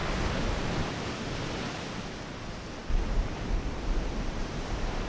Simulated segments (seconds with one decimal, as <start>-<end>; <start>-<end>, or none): 0.0-0.5; 2.8-5.1